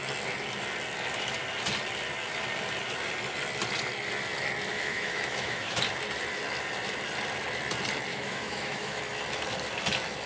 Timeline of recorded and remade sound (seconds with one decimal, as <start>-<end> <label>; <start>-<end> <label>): 0.0-4.7 recorded; 4.7-5.8 remade; 5.8-8.1 recorded; 8.1-9.0 remade; 9.0-10.3 recorded